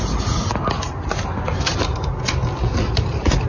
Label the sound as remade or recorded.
recorded